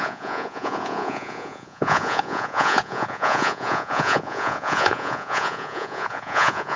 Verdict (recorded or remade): remade